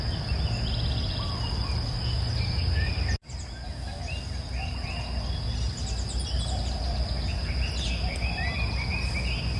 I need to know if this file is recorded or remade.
recorded